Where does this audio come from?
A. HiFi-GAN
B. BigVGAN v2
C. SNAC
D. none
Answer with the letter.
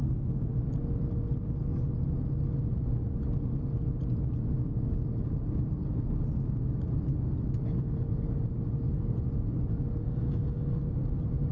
D